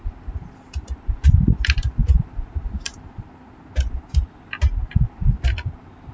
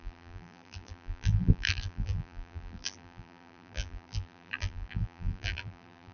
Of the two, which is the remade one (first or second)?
second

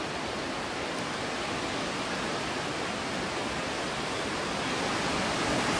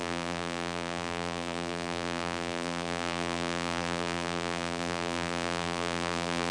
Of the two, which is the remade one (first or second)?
second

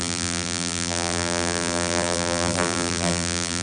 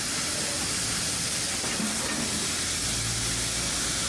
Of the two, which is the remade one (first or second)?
first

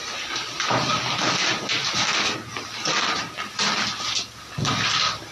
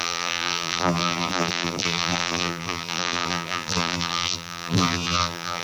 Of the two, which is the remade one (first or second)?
second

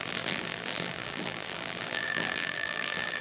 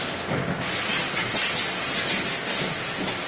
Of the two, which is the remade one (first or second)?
first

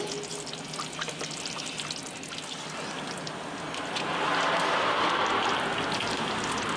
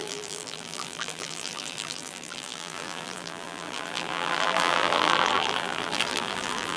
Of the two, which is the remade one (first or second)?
second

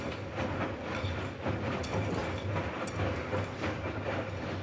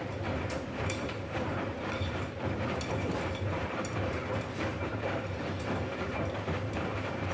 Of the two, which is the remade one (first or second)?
second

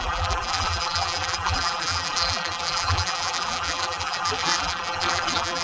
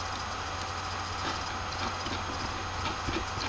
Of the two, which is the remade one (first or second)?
first